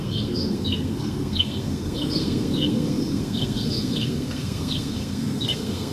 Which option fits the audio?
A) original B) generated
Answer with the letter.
B